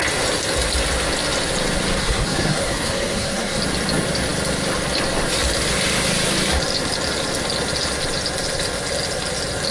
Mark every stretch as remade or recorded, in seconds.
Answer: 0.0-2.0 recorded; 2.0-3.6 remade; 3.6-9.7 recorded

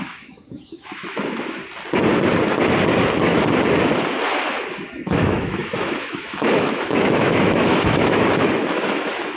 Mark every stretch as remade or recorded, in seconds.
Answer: 0.0-1.6 remade; 1.6-5.0 recorded; 5.0-9.4 remade

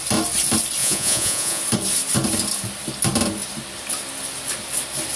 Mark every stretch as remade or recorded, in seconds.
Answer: 0.0-0.8 recorded; 0.8-1.6 remade; 1.6-5.2 recorded